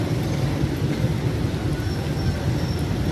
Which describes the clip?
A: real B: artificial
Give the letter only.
A